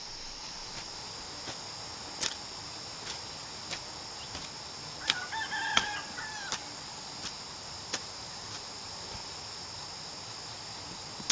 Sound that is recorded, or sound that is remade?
recorded